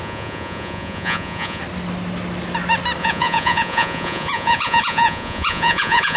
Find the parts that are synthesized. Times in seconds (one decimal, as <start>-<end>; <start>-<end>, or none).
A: 0.0-1.6; 3.0-6.2